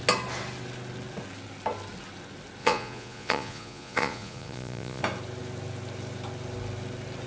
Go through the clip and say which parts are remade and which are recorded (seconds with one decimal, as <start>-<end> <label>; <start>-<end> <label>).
0.0-2.6 recorded; 2.6-5.0 remade; 5.0-7.3 recorded